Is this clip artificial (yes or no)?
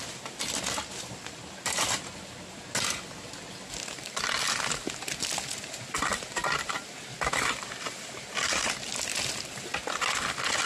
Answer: no